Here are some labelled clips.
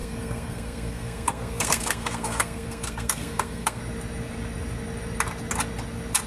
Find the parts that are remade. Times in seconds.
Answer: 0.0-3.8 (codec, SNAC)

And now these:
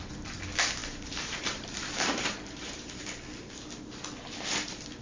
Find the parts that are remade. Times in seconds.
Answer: 0.8-3.0 (vocoder, BigVGAN v2)

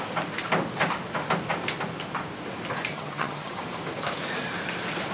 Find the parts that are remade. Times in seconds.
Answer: 2.9-3.6 (vocoder, HiFi-GAN)

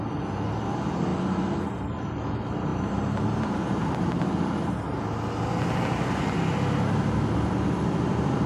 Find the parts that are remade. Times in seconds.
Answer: 2.7-5.0 (vocoder, BigVGAN v2)